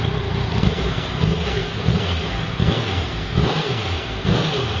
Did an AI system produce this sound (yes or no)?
yes